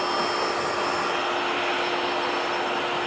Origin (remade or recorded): recorded